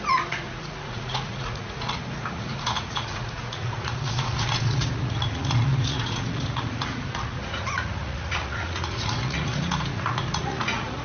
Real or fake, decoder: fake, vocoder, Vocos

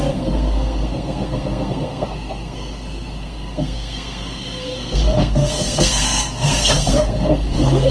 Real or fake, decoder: fake, codec, SNAC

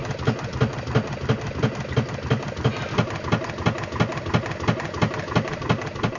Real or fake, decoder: real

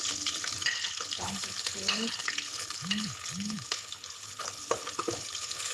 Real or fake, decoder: fake, codec, HILCodec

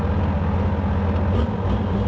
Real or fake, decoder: real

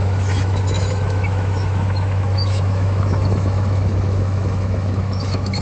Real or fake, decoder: fake, autoencoder, DAC-VAE